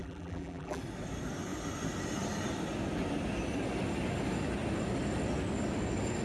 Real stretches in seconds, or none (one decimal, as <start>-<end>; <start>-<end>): 0.8-6.2